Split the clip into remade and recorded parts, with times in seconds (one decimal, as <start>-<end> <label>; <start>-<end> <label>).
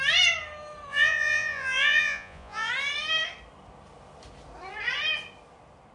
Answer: 0.0-0.9 recorded; 0.9-2.7 remade; 2.7-5.9 recorded